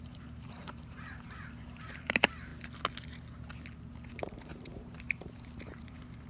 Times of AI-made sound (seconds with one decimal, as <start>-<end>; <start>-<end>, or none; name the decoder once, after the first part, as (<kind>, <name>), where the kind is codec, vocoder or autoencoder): 0.0-2.5 (vocoder, BigVGAN v2); 4.1-6.3